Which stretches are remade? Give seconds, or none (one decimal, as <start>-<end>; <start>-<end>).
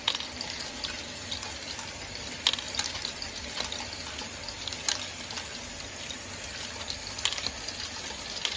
none